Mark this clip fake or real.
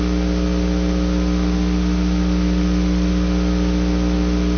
real